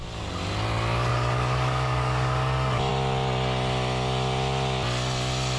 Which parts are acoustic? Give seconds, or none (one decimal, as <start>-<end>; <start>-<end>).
0.0-1.1; 2.9-5.6